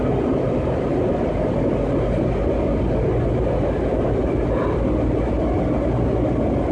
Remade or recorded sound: recorded